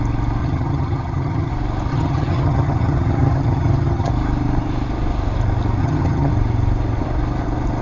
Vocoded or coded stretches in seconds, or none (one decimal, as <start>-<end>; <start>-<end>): 0.4-1.5; 1.9-4.1; 5.8-6.3